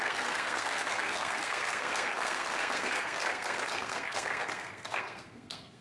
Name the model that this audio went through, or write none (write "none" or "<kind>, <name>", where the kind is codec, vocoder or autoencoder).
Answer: codec, SNAC